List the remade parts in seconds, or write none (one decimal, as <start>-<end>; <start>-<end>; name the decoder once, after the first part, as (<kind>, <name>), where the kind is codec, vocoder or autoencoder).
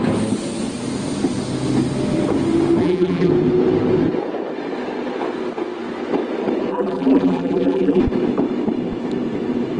2.8-3.3 (vocoder, BigVGAN v2); 6.7-8.0